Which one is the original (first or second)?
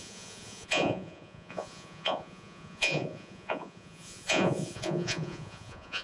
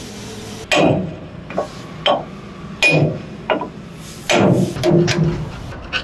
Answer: second